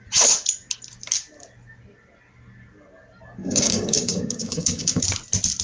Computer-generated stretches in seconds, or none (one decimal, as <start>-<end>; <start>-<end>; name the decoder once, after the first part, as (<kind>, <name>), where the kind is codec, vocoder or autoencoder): 3.4-5.0 (codec, DAC)